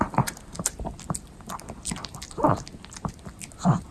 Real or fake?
real